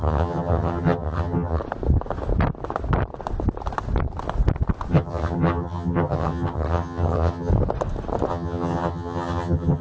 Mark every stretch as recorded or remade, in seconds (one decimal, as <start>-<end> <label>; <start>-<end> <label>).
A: 0.0-1.6 remade; 1.6-4.9 recorded; 4.9-7.5 remade; 7.5-8.3 recorded; 8.3-9.8 remade